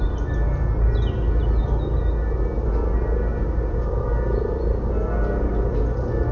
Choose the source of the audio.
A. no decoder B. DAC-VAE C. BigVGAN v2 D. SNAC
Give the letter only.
A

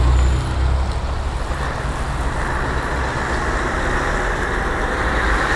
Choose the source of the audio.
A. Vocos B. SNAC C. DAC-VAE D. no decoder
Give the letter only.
D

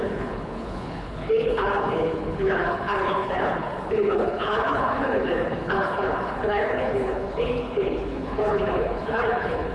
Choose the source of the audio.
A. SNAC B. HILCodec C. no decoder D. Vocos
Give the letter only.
B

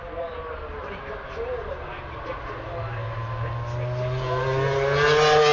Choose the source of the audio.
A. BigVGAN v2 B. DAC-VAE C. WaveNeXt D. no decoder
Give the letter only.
D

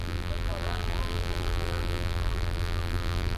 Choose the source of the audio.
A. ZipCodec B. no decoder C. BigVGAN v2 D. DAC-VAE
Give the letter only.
C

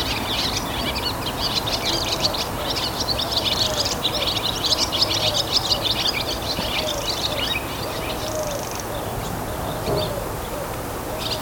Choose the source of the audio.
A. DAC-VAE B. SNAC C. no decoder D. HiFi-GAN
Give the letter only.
C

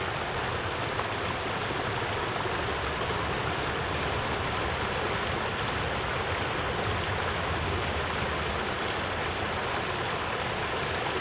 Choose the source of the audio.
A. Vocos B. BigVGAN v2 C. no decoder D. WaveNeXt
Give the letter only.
C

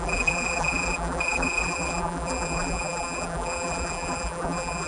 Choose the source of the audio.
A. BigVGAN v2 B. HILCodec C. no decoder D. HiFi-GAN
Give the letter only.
A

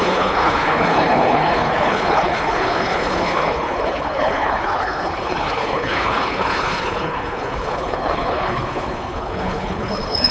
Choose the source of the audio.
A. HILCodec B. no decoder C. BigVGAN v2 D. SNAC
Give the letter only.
A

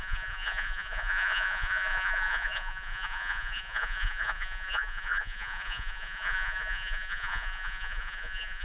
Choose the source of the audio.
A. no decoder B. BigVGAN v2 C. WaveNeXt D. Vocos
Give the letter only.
D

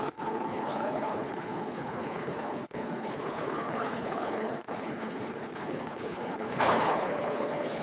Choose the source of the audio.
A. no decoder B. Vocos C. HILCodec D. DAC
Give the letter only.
C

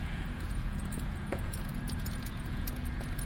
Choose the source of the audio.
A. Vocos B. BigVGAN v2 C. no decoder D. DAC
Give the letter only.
A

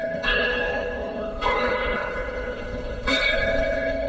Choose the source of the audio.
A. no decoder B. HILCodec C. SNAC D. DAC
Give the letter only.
B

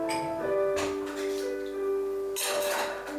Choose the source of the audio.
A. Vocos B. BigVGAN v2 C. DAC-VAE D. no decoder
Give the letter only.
D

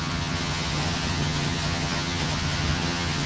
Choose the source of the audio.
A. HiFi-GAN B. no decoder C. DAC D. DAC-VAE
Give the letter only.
A